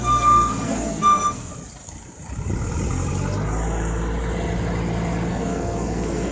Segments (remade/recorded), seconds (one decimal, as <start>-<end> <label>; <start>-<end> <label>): 0.0-1.5 remade; 1.5-5.3 recorded; 5.3-6.3 remade